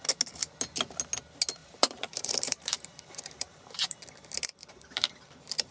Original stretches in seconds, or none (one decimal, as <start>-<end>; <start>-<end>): 0.0-1.6; 3.9-4.6